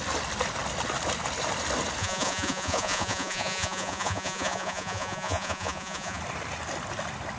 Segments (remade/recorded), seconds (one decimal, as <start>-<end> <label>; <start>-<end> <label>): 0.0-2.0 recorded; 2.0-6.2 remade; 6.2-7.4 recorded

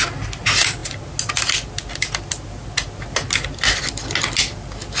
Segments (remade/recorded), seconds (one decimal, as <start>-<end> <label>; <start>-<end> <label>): 0.0-5.0 recorded

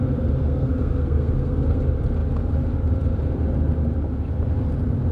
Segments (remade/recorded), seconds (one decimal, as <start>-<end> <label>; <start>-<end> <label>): 0.0-0.4 recorded; 0.4-1.8 remade; 1.8-5.1 recorded

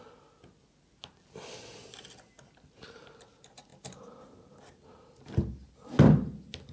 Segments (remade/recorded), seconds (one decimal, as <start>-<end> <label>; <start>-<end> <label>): 0.0-6.7 recorded

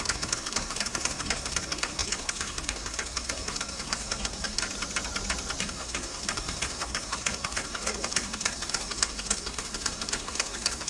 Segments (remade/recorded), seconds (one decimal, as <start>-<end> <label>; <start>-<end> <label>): 0.0-4.6 remade; 4.6-5.6 recorded; 5.6-10.9 remade

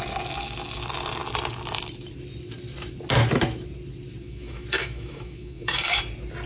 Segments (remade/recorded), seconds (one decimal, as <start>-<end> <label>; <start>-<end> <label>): 0.0-4.2 recorded; 4.2-6.0 remade; 6.0-6.5 recorded

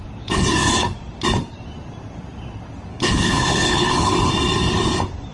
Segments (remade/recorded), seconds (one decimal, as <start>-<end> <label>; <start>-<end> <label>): 0.0-2.9 recorded; 2.9-4.3 remade; 4.3-5.3 recorded

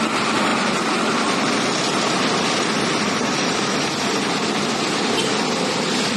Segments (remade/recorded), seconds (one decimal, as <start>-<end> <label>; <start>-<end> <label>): 0.0-6.2 recorded